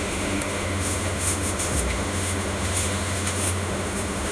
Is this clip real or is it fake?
fake